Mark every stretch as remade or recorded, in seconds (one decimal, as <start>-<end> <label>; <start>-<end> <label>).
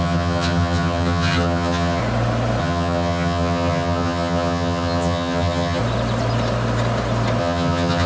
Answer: 0.0-2.0 remade; 2.0-2.6 recorded; 2.6-5.8 remade; 5.8-7.4 recorded; 7.4-8.1 remade